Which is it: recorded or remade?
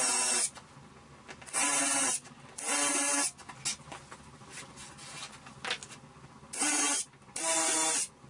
recorded